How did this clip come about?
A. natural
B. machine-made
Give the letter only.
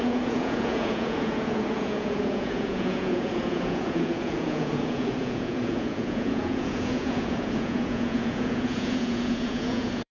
B